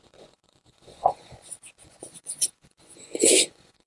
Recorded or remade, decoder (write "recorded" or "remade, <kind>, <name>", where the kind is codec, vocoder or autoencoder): remade, vocoder, Vocos